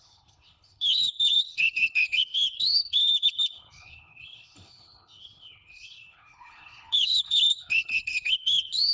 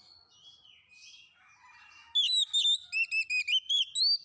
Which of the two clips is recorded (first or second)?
second